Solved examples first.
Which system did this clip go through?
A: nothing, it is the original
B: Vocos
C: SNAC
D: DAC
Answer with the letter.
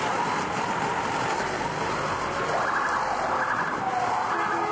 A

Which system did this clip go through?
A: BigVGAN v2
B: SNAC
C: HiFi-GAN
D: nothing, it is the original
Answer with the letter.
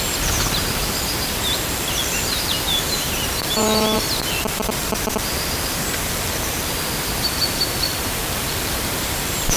A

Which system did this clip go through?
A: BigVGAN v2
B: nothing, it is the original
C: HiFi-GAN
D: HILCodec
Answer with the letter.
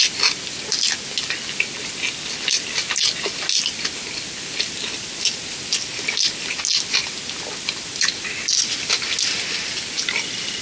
B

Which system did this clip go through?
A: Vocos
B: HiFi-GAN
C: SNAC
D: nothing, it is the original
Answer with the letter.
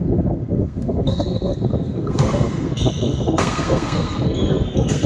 C